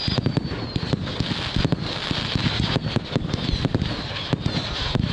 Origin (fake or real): real